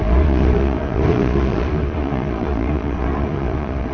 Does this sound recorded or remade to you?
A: remade